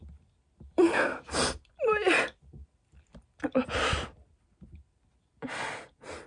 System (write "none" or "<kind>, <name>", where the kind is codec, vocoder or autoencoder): none